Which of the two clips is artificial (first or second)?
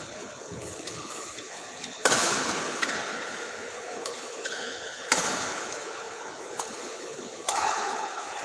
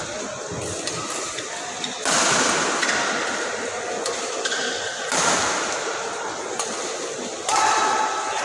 first